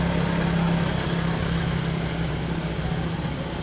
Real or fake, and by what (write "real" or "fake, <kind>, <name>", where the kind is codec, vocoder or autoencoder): real